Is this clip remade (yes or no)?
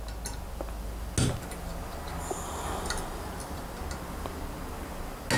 no